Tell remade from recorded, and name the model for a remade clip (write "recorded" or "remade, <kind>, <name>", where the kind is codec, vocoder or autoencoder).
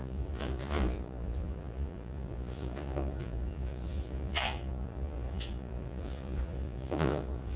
remade, vocoder, Vocos